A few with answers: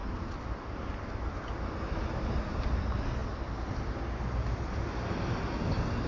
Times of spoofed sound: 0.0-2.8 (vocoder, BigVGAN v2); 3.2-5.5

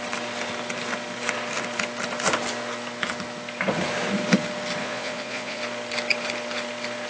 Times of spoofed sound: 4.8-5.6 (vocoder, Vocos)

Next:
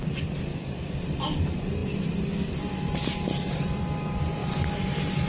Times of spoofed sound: 0.5-1.0 (codec, DAC)

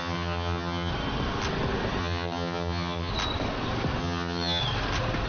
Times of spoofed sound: 0.0-0.9 (vocoder, HiFi-GAN); 2.0-3.1; 4.0-4.6

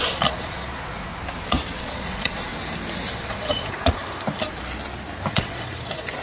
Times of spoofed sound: 0.0-1.1 (vocoder, Vocos); 1.8-2.5; 3.1-4.0; 5.3-6.2

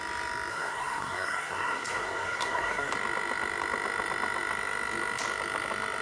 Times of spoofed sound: 0.5-2.9 (codec, SNAC)

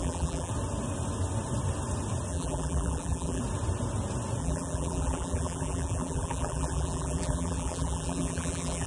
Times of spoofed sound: 0.0-0.5 (vocoder, BigVGAN v2); 2.3-3.4; 4.4-8.9

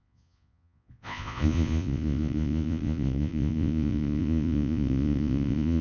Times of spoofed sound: 0.0-5.8 (vocoder, Vocos)